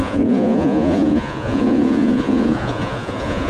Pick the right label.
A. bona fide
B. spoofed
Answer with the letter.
B